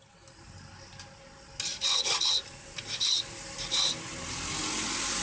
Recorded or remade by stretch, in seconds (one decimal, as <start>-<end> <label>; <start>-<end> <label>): 0.0-5.2 recorded